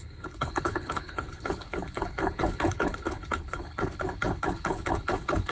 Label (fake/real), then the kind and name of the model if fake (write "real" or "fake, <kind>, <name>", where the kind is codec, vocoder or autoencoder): fake, codec, HILCodec